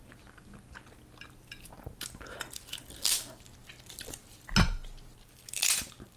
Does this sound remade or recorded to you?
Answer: recorded